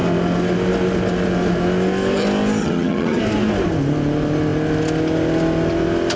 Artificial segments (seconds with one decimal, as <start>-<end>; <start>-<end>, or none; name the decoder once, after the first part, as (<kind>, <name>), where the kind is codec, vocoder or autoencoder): 2.6-3.2 (vocoder, HiFi-GAN)